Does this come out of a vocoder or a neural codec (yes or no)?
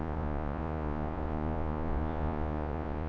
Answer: yes